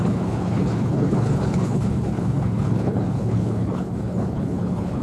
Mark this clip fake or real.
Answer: fake